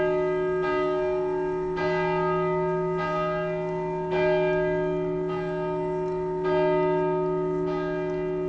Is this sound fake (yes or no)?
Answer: no